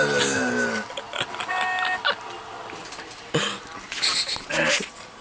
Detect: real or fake real